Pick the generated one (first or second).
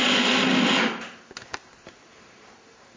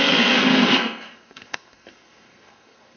second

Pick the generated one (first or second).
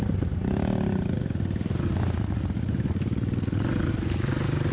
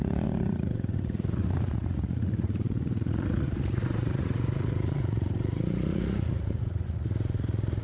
second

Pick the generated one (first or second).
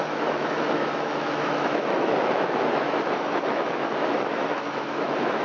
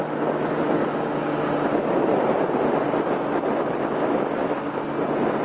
first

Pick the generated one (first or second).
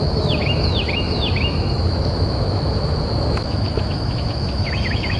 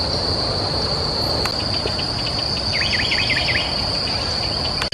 first